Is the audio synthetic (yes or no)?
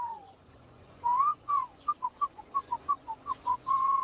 yes